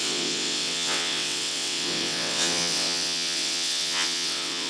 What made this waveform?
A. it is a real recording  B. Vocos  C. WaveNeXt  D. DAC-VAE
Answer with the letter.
C